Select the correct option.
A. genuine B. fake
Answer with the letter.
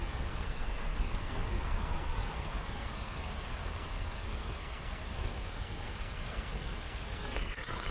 B